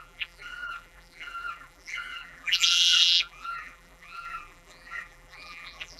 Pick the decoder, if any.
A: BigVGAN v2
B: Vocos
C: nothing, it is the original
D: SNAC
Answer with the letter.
A